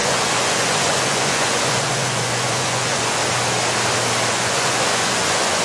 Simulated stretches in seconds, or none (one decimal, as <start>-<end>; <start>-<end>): 0.0-3.2; 4.3-5.6